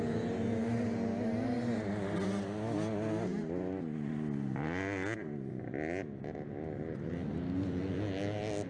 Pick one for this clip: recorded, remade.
recorded